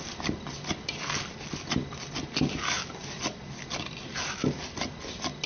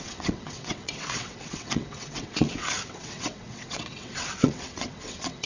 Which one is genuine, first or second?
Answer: first